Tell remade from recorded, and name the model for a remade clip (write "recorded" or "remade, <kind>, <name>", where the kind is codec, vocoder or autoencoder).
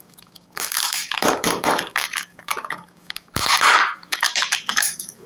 remade, codec, DAC